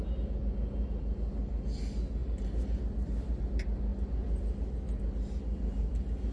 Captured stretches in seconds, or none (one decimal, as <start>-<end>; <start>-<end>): 0.0-2.2; 3.4-6.3